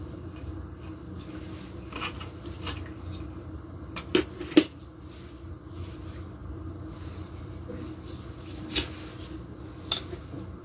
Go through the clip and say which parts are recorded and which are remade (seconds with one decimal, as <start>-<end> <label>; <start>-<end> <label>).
0.0-6.4 recorded; 6.4-7.5 remade; 7.5-10.6 recorded